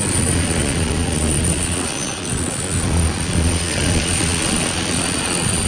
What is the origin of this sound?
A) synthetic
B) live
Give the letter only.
A